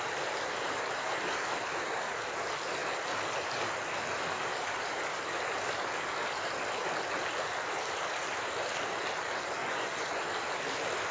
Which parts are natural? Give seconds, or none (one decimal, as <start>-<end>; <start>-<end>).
0.0-9.6; 10.2-11.1